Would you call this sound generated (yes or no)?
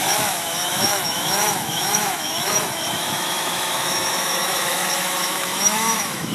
yes